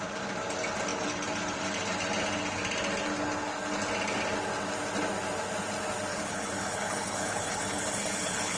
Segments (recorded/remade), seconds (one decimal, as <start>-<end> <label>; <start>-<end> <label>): 0.0-6.1 recorded; 6.1-8.6 remade